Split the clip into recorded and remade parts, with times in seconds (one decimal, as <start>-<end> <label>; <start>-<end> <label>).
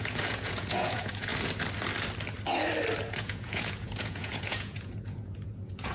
0.0-1.3 remade; 1.3-3.1 recorded; 3.1-5.9 remade